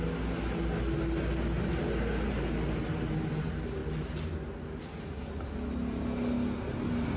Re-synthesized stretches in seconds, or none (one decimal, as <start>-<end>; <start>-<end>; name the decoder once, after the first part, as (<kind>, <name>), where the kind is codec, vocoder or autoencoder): none

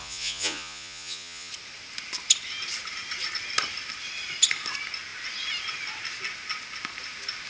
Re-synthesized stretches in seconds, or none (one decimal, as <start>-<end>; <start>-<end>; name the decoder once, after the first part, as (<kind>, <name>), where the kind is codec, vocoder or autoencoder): 0.0-1.5 (vocoder, Vocos)

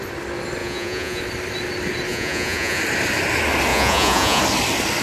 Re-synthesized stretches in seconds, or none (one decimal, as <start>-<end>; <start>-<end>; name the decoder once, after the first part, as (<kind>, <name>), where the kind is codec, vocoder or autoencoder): 0.6-1.2 (vocoder, Vocos); 2.1-2.8; 3.7-4.4

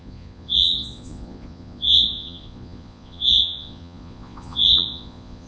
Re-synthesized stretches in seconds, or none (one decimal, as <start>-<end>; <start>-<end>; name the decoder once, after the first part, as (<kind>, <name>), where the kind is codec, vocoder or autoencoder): 0.0-5.5 (vocoder, Vocos)

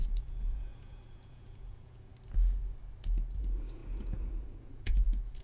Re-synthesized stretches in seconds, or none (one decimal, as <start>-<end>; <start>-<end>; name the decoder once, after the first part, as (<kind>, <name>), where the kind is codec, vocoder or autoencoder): 0.0-2.1 (vocoder, Vocos); 3.4-5.4